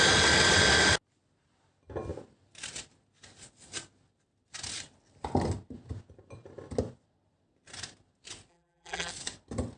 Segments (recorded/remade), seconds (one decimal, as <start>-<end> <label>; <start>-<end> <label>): 0.0-8.5 recorded; 8.5-9.1 remade; 9.1-9.8 recorded